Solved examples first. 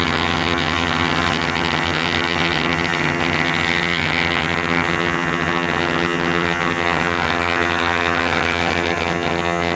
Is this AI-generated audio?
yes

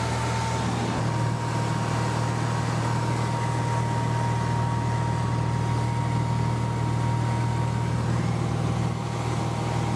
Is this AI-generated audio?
no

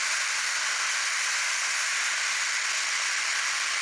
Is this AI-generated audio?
no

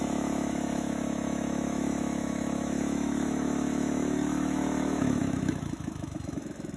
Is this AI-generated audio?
yes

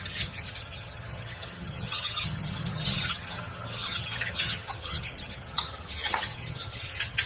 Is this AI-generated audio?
yes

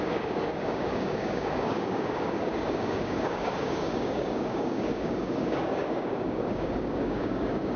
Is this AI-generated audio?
yes